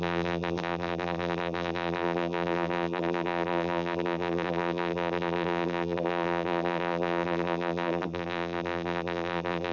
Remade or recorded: remade